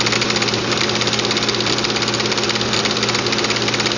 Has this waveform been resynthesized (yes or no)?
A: no